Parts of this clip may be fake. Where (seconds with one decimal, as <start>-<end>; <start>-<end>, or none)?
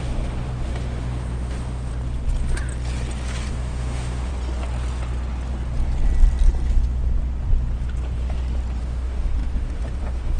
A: 0.0-1.9; 3.5-4.3; 8.8-10.4